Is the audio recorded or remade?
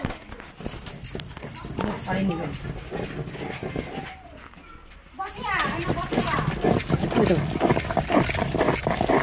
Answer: recorded